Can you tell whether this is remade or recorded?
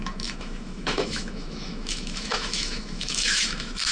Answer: remade